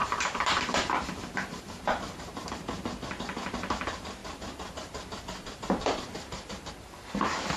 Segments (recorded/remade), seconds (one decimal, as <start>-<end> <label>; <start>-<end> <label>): 0.0-2.5 remade; 2.5-4.2 recorded; 4.2-6.7 remade; 6.7-7.6 recorded